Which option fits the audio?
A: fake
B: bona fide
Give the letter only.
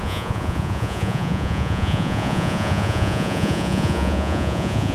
A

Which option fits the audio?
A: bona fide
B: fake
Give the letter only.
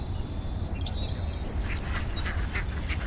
B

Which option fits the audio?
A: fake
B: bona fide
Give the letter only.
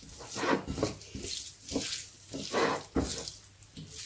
B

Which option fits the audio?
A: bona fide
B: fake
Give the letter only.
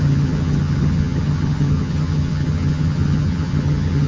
B